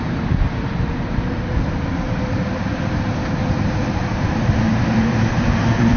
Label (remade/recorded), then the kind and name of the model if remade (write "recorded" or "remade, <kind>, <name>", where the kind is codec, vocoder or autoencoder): remade, vocoder, BigVGAN v2